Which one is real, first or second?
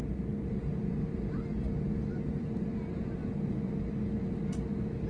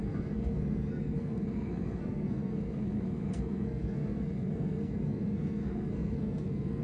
first